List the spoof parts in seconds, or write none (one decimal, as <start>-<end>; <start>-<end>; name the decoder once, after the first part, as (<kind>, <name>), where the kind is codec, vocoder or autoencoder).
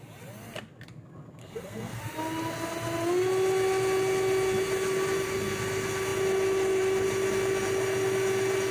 1.4-2.0 (codec, SNAC)